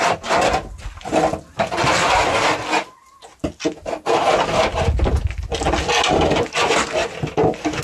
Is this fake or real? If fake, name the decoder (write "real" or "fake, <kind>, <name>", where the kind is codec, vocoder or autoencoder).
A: real